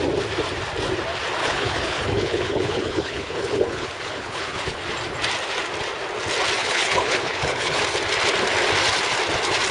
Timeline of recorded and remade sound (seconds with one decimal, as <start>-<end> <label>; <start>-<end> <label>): 0.0-1.4 recorded; 1.4-4.8 remade; 4.8-6.6 recorded; 6.6-7.8 remade; 7.8-9.7 recorded